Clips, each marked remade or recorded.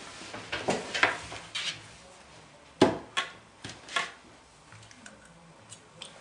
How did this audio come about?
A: recorded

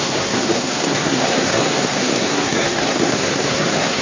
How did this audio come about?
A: remade